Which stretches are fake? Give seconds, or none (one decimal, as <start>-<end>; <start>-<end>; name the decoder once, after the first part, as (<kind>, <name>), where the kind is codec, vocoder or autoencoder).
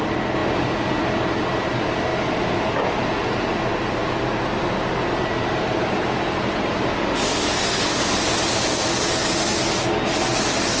none